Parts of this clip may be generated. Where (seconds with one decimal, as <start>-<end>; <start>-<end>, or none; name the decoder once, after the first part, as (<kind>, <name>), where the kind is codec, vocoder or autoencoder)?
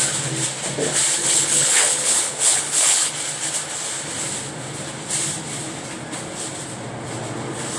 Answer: 1.2-3.1 (codec, HILCodec)